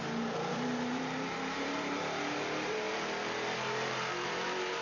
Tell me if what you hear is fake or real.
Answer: fake